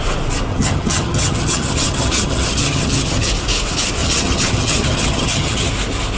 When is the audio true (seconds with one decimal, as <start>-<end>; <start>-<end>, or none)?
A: 0.0-0.5; 3.3-4.0; 5.7-6.2